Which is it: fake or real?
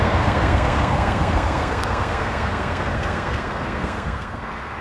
fake